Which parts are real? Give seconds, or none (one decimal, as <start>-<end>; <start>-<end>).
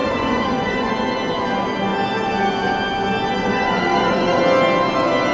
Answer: 0.9-3.4; 4.4-5.3